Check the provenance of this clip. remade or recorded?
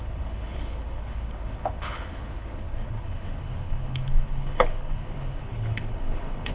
remade